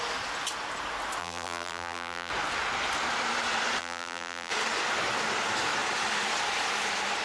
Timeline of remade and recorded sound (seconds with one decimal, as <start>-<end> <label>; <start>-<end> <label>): 0.0-1.2 recorded; 1.2-2.3 remade; 2.3-3.8 recorded; 3.8-4.5 remade; 4.5-7.2 recorded